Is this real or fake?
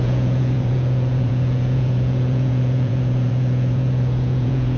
fake